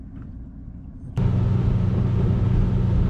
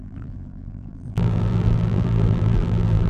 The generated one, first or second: second